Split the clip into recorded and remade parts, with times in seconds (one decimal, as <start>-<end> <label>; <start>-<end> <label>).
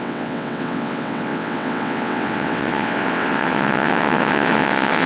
0.0-5.1 remade